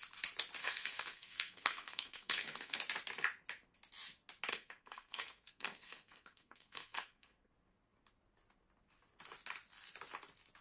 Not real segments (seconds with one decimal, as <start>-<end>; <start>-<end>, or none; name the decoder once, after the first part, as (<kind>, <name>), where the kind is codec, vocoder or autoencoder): 0.6-2.8 (codec, SNAC); 4.5-7.5